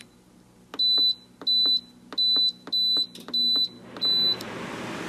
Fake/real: real